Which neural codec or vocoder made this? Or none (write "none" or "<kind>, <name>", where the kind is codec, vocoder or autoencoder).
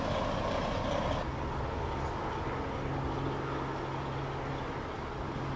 none